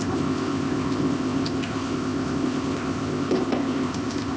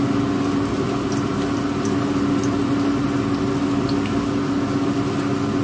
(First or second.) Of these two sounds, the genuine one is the second